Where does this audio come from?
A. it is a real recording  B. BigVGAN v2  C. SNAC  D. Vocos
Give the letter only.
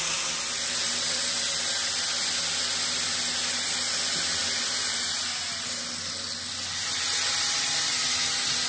A